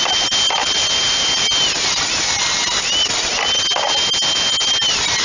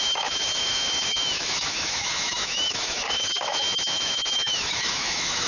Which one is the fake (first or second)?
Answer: second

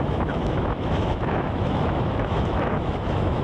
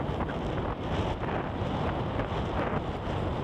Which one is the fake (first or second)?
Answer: first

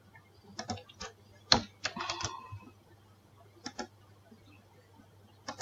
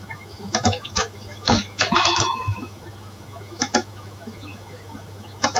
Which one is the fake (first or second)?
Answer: second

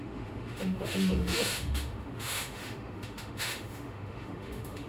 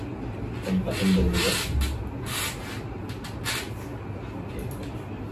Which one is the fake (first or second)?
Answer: first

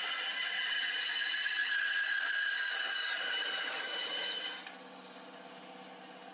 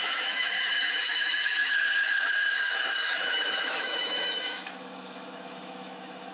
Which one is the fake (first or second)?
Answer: second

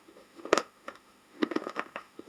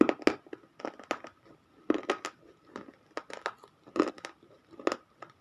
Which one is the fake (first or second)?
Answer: first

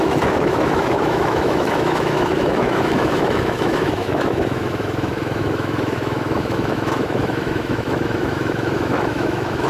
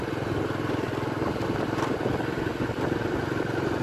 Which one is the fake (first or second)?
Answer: first